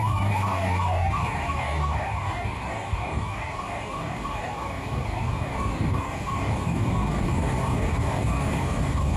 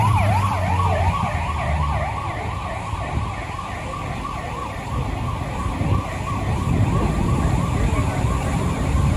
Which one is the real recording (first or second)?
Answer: second